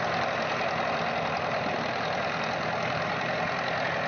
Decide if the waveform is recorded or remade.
recorded